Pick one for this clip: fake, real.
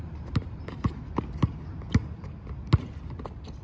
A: real